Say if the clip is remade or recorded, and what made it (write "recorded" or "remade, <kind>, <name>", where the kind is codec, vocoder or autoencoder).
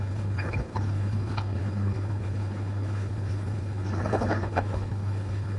remade, codec, HILCodec